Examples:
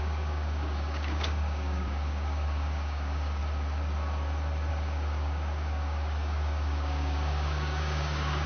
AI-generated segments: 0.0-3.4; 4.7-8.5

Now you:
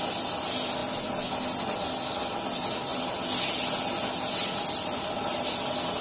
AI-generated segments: none

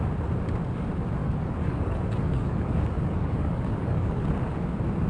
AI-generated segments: 1.2-4.3

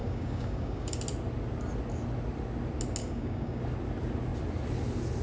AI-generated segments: 0.0-1.0; 3.0-3.6

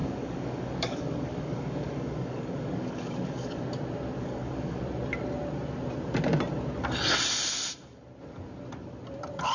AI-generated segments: 0.0-3.6; 4.2-4.8

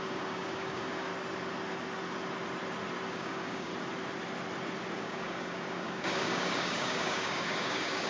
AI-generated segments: 0.0-1.1; 3.1-3.7; 5.0-8.1

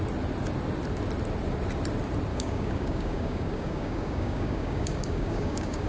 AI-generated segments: 2.3-5.9

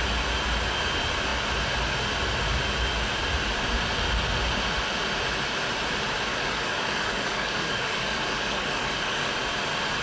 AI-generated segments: 6.3-9.3